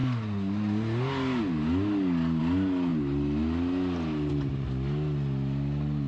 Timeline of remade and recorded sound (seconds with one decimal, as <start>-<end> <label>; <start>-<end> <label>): 0.0-6.1 recorded

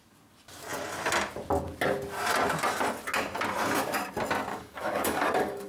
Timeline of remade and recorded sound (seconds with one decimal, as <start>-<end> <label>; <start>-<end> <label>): 0.0-4.5 recorded; 4.5-5.7 remade

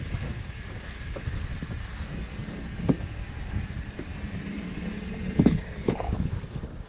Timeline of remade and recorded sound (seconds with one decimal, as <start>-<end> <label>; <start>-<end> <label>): 0.0-1.5 remade; 1.5-5.6 recorded; 5.6-6.9 remade

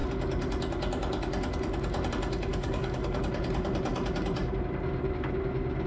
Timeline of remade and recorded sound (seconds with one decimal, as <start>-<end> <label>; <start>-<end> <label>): 0.0-2.5 recorded; 2.5-3.2 remade; 3.2-5.9 recorded

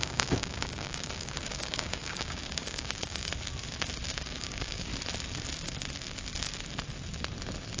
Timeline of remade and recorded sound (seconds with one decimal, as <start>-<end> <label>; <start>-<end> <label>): 0.0-3.3 remade; 3.3-4.1 recorded; 4.1-4.9 remade; 4.9-7.8 recorded

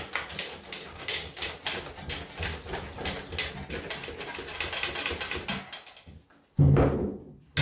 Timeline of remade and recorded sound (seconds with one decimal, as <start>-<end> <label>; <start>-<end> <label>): 0.0-0.8 recorded; 0.8-1.5 remade; 1.5-7.6 recorded

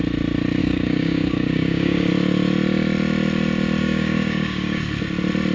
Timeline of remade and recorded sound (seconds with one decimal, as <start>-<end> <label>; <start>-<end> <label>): 0.0-0.6 recorded; 0.6-2.1 remade; 2.1-3.8 recorded; 3.8-4.8 remade; 4.8-5.5 recorded

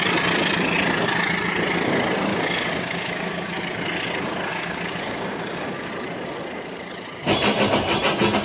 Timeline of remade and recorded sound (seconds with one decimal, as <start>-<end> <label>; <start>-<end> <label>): 0.0-2.3 recorded; 2.3-3.3 remade; 3.3-4.5 recorded; 4.5-5.9 remade; 5.9-8.4 recorded